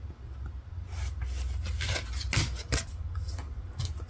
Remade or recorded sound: recorded